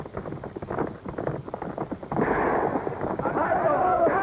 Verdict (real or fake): real